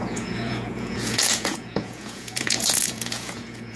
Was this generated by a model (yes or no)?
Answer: yes